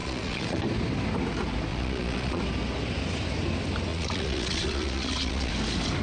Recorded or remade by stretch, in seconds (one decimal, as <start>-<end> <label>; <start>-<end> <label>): 0.0-0.6 remade; 0.6-1.7 recorded; 1.7-2.4 remade; 2.4-3.9 recorded; 3.9-5.5 remade; 5.5-6.0 recorded